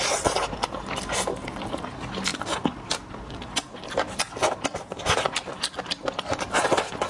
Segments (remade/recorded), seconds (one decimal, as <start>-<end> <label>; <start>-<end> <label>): 0.0-7.1 recorded